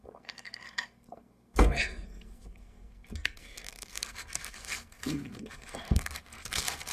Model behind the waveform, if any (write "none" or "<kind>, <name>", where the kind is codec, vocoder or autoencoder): codec, SNAC